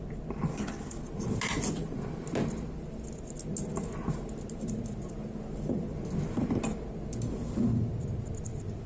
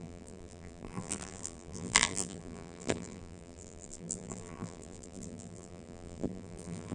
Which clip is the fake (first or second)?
second